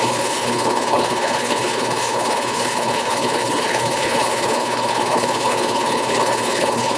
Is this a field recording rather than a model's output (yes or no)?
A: no